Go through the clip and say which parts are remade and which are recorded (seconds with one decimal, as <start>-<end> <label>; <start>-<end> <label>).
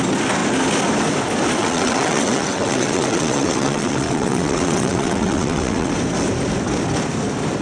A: 0.0-1.6 recorded; 1.6-5.9 remade; 5.9-7.6 recorded